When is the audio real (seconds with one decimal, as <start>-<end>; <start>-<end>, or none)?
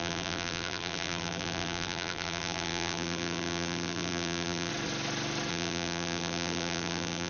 4.7-5.5